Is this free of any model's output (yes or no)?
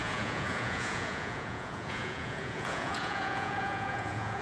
no